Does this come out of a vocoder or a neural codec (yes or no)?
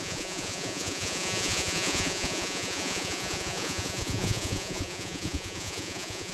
yes